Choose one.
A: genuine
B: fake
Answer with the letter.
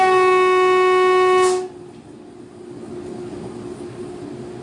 A